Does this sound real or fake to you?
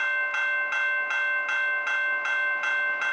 real